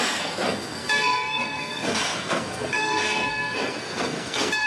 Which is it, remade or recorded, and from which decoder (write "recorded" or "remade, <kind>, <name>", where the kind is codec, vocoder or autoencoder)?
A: remade, codec, SNAC